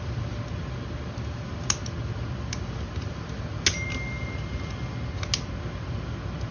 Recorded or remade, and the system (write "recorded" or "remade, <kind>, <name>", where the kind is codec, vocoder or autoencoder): recorded